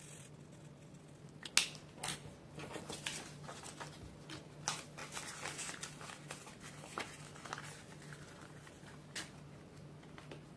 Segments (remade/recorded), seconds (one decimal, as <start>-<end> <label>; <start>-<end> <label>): 0.0-10.6 recorded